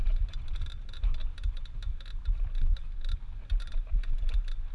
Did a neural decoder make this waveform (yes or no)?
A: no